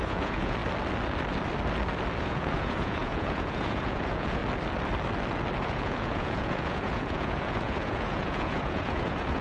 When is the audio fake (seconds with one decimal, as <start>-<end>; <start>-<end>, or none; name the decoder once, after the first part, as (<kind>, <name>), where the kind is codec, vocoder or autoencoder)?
0.0-0.6 (vocoder, Vocos); 2.2-4.4; 5.6-9.4